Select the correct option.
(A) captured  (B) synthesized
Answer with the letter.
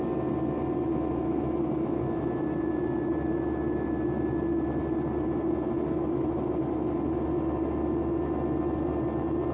A